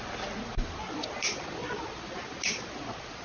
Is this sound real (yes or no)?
yes